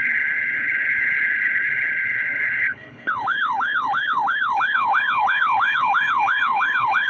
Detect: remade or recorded remade